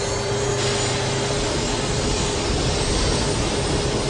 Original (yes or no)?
yes